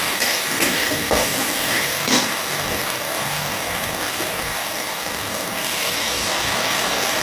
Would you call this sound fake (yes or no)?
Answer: yes